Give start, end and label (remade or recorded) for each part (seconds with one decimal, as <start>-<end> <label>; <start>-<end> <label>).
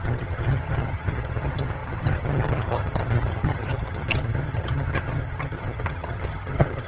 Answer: 0.0-6.9 remade